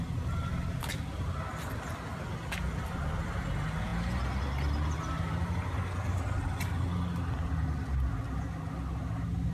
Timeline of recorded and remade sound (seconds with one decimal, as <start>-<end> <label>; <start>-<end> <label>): 0.0-9.5 recorded